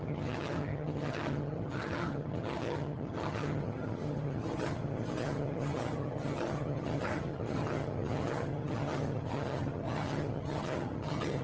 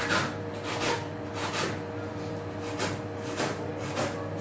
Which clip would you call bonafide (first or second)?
second